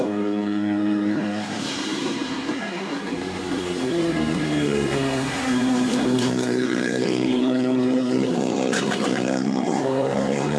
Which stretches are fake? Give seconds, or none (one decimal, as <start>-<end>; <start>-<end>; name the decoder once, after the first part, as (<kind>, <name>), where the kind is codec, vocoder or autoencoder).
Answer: 0.0-10.6 (codec, SNAC)